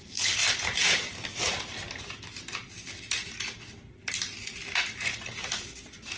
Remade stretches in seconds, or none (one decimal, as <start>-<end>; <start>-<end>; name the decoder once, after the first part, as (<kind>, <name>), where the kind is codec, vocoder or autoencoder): none